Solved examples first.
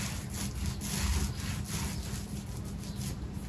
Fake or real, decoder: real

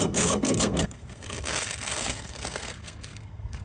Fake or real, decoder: fake, codec, SNAC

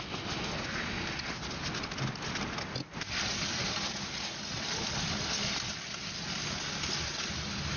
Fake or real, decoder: real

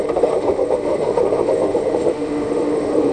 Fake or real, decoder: fake, autoencoder, DAC-VAE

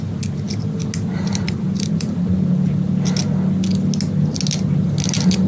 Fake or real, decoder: real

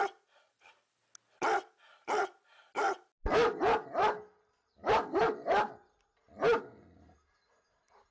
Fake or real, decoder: real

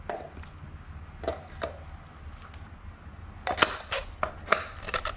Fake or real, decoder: real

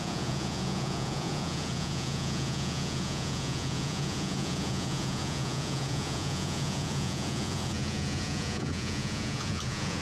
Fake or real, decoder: fake, vocoder, Vocos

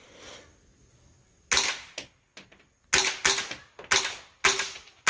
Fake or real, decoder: real